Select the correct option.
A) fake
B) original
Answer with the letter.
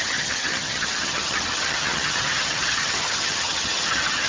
A